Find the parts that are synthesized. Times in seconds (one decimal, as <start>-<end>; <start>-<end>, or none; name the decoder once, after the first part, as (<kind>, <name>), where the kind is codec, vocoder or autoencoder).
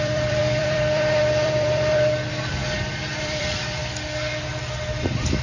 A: 0.0-2.6 (vocoder, BigVGAN v2); 3.2-3.8